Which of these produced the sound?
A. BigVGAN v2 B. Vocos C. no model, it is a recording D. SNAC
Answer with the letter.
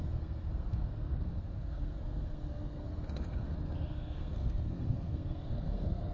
D